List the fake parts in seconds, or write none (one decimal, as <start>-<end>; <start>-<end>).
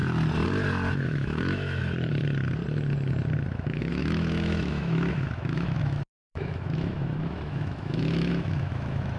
0.9-1.8; 3.5-9.2